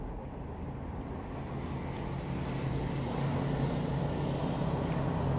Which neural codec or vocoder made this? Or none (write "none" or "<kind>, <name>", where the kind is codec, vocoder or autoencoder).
none